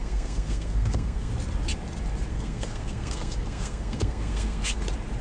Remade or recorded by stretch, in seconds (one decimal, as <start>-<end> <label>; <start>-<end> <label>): 0.0-1.3 remade; 1.3-2.3 recorded; 2.3-4.8 remade; 4.8-5.2 recorded